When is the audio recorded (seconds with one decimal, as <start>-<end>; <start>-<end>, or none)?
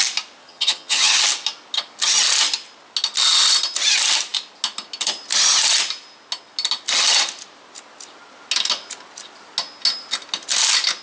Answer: 0.0-0.4; 1.2-11.0